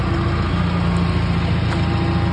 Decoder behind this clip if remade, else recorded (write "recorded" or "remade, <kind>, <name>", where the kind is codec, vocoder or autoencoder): recorded